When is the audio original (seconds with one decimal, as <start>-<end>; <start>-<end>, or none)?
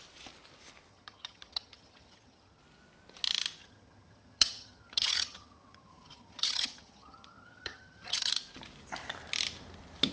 0.0-0.9; 2.6-3.6; 8.3-10.1